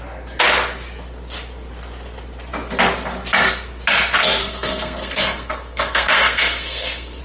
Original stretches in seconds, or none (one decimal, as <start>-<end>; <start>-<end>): 0.0-4.4